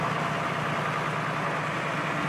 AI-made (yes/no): no